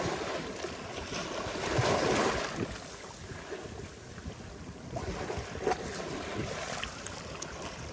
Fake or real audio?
real